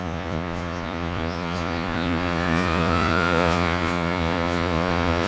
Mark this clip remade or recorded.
remade